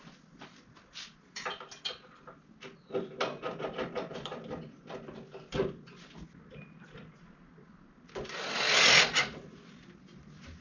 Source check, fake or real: real